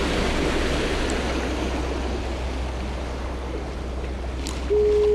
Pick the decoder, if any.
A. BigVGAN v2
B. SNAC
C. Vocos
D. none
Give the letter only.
D